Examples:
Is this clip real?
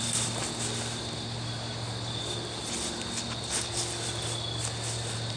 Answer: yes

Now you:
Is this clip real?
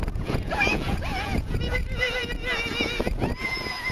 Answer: no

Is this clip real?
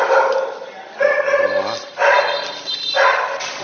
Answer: yes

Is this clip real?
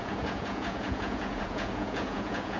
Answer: no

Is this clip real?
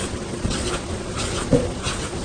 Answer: no